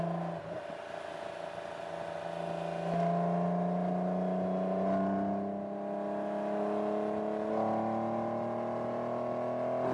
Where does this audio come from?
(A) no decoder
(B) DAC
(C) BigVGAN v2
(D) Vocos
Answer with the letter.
A